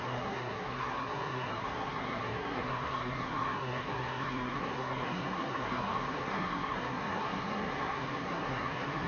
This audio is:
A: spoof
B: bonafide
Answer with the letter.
A